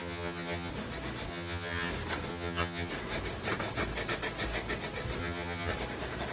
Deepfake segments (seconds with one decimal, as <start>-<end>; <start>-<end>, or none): 0.0-0.7; 1.3-1.9; 2.3-2.9; 5.2-5.7